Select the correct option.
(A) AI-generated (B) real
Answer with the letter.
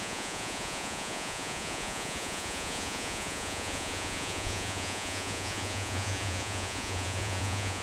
A